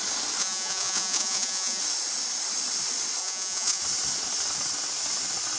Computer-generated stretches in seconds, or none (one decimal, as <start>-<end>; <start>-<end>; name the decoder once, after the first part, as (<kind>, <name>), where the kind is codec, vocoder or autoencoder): 0.4-1.8 (vocoder, Vocos); 3.2-3.8